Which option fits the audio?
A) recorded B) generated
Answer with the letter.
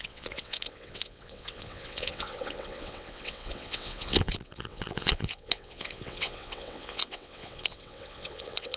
B